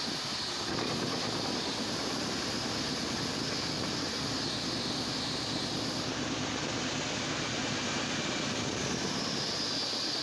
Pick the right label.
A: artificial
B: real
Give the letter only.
B